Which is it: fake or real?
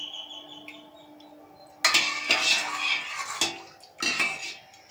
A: real